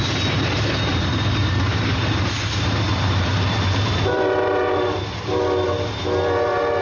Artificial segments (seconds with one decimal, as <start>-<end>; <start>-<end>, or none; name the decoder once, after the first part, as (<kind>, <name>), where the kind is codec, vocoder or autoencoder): 0.9-5.0 (vocoder, BigVGAN v2)